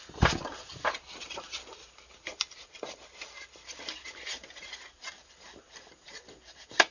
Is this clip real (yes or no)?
no